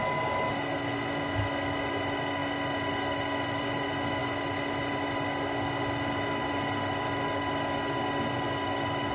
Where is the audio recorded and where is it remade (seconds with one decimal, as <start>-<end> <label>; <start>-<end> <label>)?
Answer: 0.0-9.1 recorded